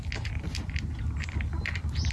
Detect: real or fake real